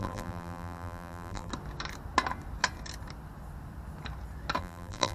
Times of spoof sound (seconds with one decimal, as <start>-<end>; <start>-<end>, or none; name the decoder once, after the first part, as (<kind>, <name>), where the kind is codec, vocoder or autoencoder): 0.0-1.5 (vocoder, BigVGAN v2); 4.6-5.1